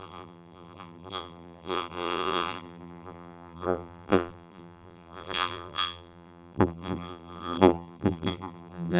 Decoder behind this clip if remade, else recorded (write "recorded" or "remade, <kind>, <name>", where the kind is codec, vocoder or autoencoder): remade, vocoder, BigVGAN v2